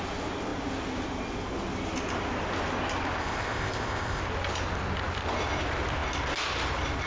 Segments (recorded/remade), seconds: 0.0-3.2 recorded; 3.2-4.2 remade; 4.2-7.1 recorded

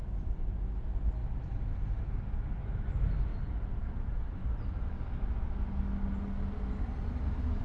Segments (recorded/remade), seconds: 0.0-3.3 remade; 3.3-3.8 recorded; 3.8-4.4 remade; 4.4-7.6 recorded